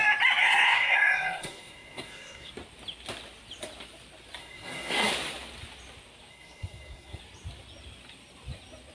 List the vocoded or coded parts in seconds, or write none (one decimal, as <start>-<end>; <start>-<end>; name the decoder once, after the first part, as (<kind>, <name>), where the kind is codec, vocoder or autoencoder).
0.4-2.5 (codec, SNAC); 4.4-5.1; 6.3-7.2